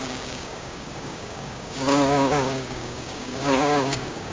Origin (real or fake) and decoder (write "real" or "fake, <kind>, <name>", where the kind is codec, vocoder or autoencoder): fake, codec, DAC